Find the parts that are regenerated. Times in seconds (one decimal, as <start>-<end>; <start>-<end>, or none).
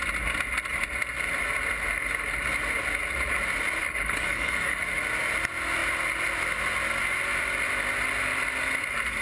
3.8-4.8